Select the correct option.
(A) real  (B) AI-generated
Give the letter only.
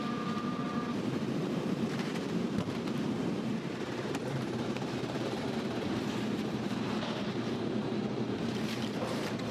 B